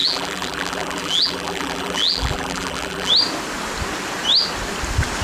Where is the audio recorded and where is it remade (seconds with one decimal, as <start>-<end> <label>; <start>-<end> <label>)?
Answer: 0.0-3.1 remade; 3.1-5.2 recorded

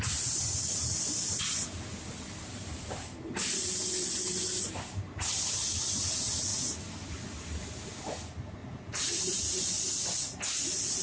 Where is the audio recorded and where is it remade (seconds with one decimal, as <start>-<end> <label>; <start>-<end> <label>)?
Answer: 0.0-8.6 recorded; 8.6-9.4 remade; 9.4-11.0 recorded

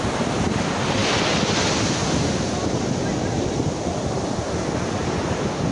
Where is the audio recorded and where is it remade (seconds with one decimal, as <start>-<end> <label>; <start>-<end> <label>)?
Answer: 0.0-5.7 recorded

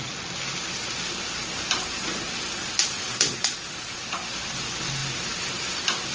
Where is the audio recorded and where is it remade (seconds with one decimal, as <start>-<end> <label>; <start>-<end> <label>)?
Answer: 0.0-1.4 recorded; 1.4-3.5 remade; 3.5-6.1 recorded

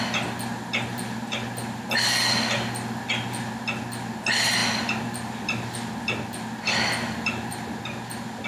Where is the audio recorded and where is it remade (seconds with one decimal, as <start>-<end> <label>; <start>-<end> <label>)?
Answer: 0.0-8.5 recorded

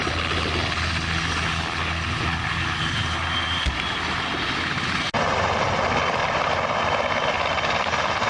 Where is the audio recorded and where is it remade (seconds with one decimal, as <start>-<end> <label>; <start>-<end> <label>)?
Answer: 0.0-8.3 recorded